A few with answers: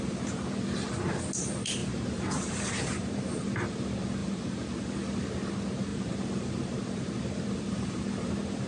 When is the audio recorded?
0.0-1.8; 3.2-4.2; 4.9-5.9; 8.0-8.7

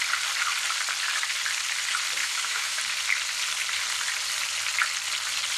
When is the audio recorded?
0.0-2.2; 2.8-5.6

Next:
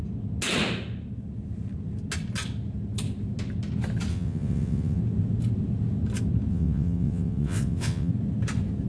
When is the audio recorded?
0.0-4.1; 5.0-6.5; 8.1-8.9